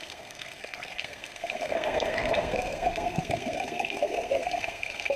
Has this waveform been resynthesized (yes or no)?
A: yes